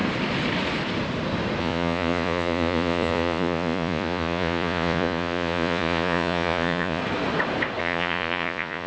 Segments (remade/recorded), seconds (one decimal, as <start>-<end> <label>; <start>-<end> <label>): 0.0-1.6 recorded; 1.6-7.0 remade; 7.0-7.8 recorded; 7.8-8.9 remade